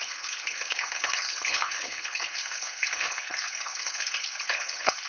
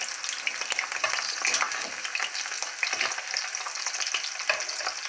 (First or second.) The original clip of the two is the second